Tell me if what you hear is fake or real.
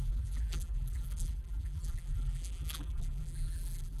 fake